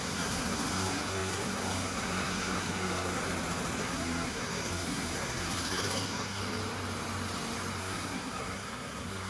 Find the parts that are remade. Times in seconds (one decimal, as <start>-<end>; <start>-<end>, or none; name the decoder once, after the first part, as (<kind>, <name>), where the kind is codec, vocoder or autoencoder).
0.0-3.2 (codec, SNAC); 3.8-6.4; 7.8-9.3